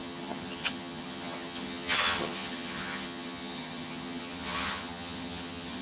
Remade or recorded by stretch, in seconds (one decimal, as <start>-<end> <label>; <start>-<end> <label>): 0.0-5.8 remade